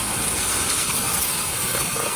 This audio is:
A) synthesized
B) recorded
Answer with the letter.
A